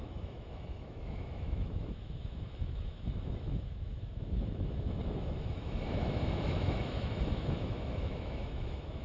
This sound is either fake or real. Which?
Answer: fake